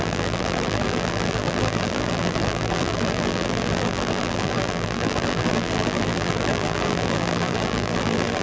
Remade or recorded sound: remade